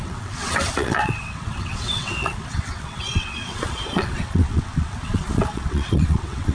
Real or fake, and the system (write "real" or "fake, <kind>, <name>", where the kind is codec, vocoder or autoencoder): fake, vocoder, WaveNeXt